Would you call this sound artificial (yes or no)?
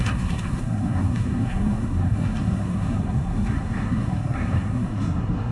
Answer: yes